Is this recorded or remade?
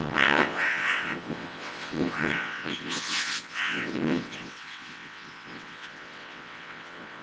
remade